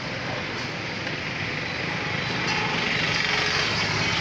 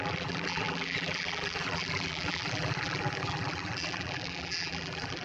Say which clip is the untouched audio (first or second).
first